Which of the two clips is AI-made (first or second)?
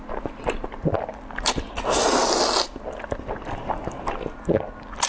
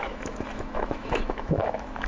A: second